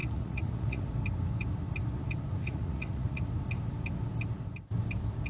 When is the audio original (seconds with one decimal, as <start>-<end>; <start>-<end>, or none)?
0.9-2.4; 3.2-5.3